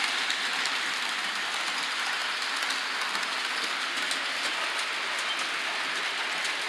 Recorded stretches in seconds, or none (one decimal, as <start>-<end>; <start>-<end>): 0.0-6.7